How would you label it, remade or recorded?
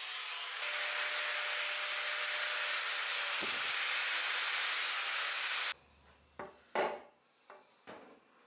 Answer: recorded